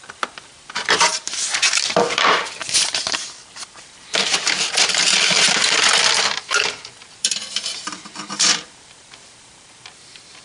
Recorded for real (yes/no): no